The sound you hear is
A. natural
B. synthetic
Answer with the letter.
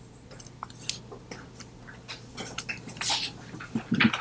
A